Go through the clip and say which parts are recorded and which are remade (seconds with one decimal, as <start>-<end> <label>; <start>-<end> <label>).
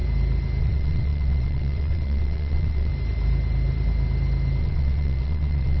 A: 0.0-0.6 recorded; 0.6-2.9 remade; 2.9-4.6 recorded; 4.6-5.8 remade